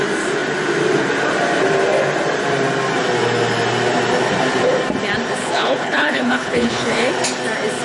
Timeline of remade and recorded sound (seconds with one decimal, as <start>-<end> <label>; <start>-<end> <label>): 0.0-5.4 recorded; 5.4-7.1 remade; 7.1-7.8 recorded